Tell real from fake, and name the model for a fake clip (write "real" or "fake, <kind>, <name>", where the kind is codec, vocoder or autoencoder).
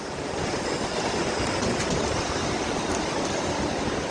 real